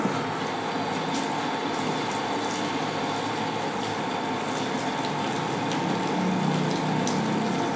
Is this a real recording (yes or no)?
yes